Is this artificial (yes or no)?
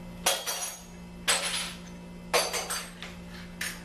no